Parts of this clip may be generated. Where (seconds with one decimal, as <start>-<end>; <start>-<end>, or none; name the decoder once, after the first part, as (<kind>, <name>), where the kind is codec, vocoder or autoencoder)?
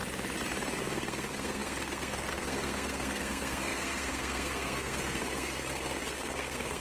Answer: 0.8-6.8 (codec, SNAC)